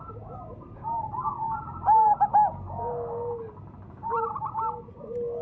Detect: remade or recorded recorded